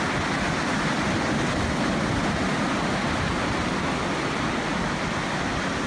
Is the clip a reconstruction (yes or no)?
no